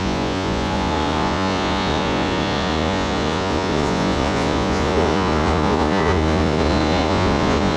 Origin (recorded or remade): remade